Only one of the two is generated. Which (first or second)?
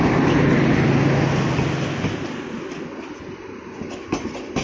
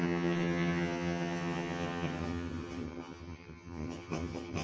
second